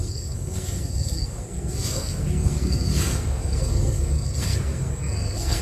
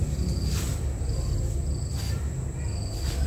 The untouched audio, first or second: second